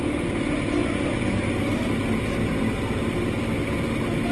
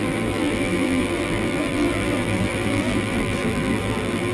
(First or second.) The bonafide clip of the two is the first